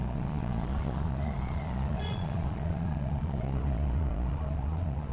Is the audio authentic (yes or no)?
no